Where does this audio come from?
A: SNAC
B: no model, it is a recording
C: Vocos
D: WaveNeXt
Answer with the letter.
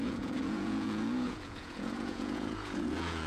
C